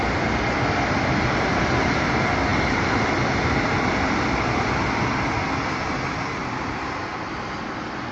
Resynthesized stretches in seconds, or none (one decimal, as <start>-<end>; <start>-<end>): none

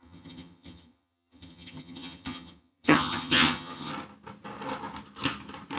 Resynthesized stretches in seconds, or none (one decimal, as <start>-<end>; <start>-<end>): 0.0-3.9